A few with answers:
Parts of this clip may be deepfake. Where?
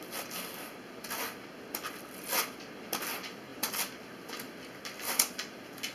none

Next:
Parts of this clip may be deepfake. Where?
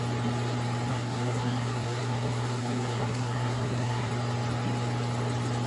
0.9-4.1 (codec, SNAC)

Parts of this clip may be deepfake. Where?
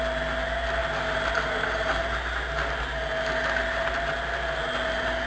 none